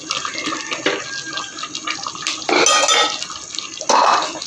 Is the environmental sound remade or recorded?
recorded